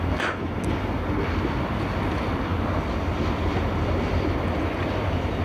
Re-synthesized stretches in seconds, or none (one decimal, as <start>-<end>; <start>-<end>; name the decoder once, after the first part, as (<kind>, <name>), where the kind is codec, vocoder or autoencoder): none

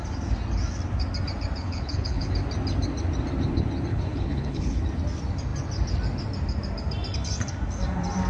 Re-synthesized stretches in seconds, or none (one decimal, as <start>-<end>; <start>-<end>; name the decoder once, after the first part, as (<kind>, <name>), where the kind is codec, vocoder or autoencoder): 1.6-2.3 (codec, HILCodec); 3.9-4.8